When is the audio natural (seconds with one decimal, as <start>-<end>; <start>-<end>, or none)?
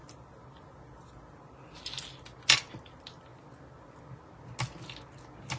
0.0-5.6